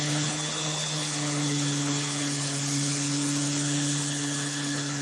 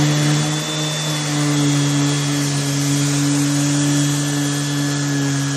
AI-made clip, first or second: first